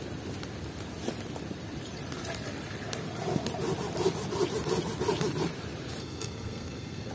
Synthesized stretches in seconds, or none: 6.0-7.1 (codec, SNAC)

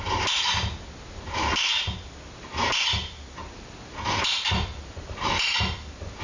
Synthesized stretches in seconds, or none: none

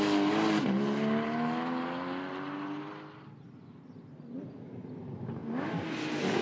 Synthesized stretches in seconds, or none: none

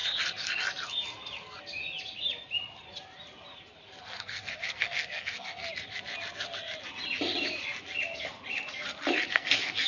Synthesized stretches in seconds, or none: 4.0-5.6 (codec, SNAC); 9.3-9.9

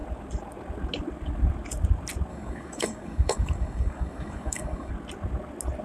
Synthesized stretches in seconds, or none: 2.3-4.9 (codec, DAC)